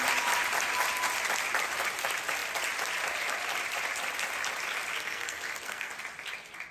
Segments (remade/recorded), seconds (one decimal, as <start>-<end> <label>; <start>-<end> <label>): 0.0-4.9 recorded; 4.9-5.9 remade; 5.9-6.7 recorded